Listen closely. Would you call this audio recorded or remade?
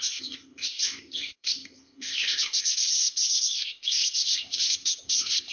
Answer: remade